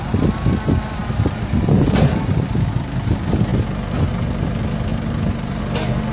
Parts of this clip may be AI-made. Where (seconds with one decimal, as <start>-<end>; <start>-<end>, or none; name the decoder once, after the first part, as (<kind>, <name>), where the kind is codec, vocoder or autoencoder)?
1.0-2.5 (vocoder, BigVGAN v2); 4.9-5.6